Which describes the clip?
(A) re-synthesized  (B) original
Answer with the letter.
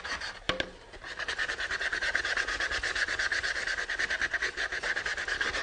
B